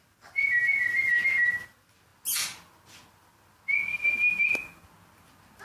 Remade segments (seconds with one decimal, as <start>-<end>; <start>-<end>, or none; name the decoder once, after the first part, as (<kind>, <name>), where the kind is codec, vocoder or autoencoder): none